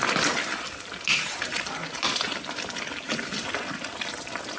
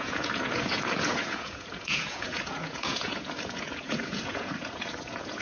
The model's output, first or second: second